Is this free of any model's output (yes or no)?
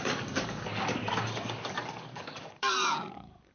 no